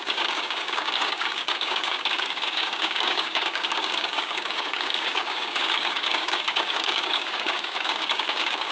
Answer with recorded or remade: remade